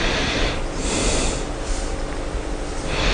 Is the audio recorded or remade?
recorded